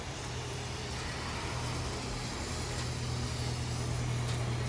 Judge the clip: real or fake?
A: real